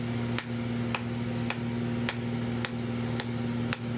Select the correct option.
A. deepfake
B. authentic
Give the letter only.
B